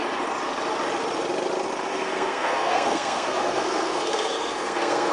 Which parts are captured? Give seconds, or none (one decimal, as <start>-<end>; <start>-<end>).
0.0-1.9